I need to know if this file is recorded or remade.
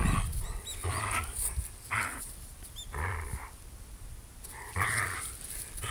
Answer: recorded